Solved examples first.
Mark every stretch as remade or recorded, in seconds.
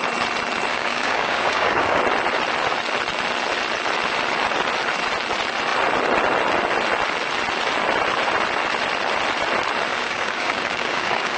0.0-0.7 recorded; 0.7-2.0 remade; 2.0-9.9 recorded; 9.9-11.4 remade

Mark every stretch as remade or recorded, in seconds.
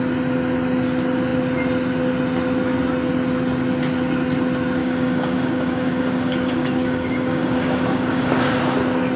0.0-4.8 recorded; 4.8-8.6 remade; 8.6-9.2 recorded